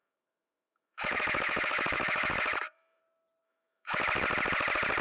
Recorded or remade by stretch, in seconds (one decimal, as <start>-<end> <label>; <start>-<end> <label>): 0.0-3.0 remade; 3.0-3.4 recorded; 3.4-4.0 remade; 4.0-5.0 recorded